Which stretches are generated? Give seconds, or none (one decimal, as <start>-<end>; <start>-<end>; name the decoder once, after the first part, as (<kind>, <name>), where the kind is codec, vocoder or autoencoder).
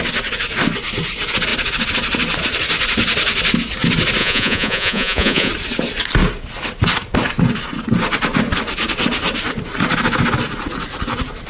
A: 4.2-5.5 (vocoder, Vocos)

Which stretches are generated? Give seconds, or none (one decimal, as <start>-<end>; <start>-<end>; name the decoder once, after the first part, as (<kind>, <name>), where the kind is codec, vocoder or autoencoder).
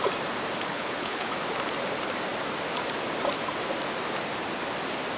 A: 0.7-1.3 (codec, HILCodec)